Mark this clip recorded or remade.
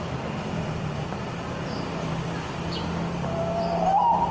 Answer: recorded